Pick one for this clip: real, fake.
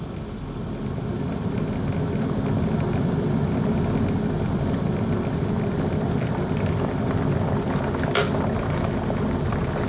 real